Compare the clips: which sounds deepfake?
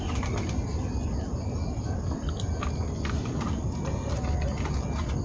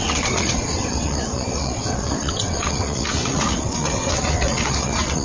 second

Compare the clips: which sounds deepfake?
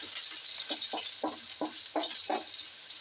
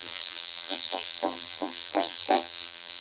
second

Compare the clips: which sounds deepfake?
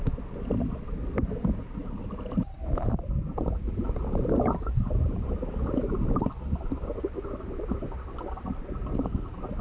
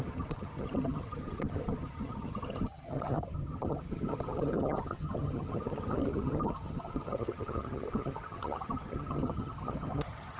second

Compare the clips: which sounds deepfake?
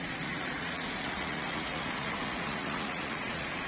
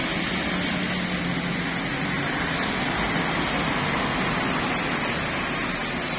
first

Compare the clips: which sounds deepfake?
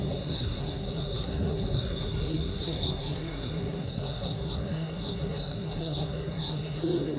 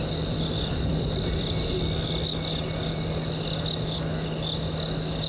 first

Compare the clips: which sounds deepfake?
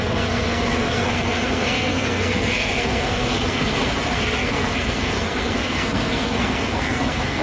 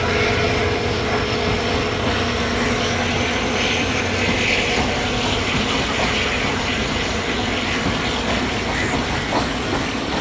first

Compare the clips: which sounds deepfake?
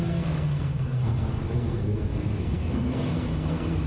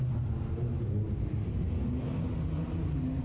first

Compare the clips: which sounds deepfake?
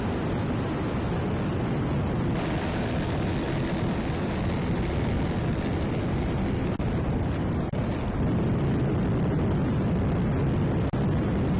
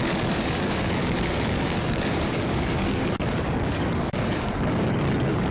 second